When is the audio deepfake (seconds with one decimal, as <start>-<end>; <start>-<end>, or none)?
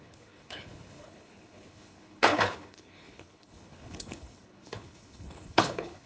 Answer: 0.0-6.1